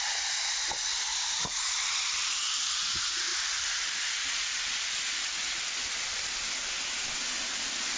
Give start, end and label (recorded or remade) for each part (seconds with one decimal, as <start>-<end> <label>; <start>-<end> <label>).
0.0-1.1 recorded; 1.1-1.7 remade; 1.7-8.0 recorded